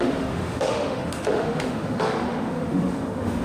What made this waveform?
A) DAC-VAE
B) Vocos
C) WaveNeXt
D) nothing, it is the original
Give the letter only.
A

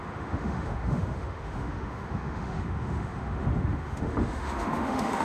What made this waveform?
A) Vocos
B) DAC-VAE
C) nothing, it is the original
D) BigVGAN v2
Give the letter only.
B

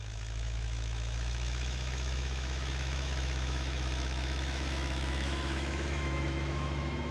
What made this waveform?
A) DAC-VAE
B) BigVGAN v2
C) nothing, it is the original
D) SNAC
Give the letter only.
A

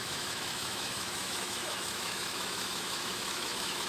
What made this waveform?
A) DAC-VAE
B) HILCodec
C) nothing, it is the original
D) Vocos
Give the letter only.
A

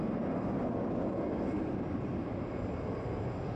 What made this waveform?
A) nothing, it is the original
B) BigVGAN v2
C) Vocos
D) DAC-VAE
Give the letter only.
A